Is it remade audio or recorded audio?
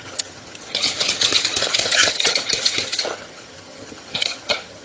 remade